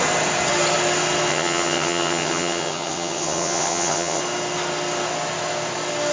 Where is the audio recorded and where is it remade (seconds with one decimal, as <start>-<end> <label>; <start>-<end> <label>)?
0.0-1.3 recorded; 1.3-4.2 remade; 4.2-6.1 recorded